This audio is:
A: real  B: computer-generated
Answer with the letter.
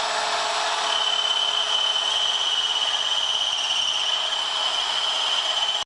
A